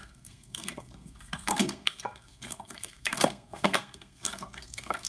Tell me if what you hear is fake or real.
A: fake